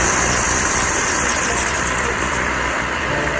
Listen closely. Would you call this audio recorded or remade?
remade